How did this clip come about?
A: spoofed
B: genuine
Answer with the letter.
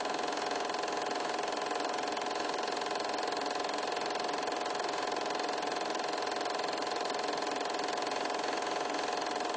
B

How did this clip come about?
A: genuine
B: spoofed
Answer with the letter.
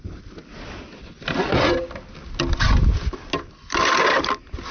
A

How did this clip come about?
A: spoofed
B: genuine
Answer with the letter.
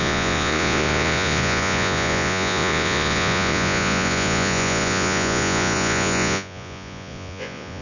A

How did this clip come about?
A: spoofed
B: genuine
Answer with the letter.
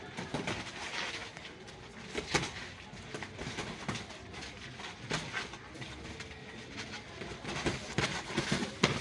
B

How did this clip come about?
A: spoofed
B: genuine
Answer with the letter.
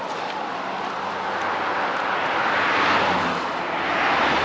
A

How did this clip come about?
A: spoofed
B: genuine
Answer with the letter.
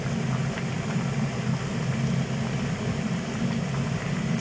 B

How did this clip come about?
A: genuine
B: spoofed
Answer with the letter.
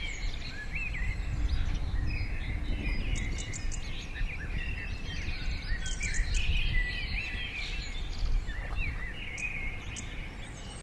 A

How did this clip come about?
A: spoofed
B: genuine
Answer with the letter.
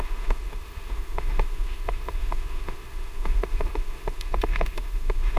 A